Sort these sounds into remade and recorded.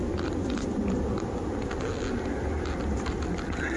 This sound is recorded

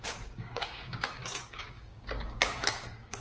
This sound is remade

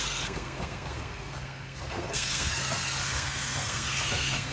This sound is remade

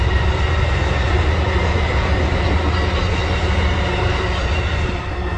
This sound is recorded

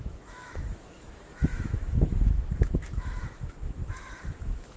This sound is remade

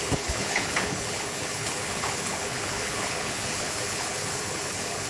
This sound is remade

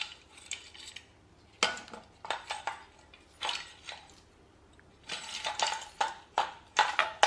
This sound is recorded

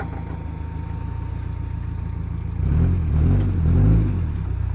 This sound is recorded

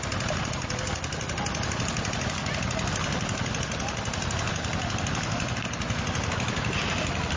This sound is recorded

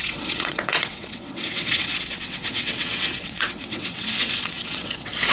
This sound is remade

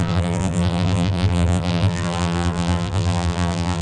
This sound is remade